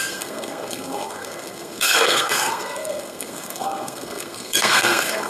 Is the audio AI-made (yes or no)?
yes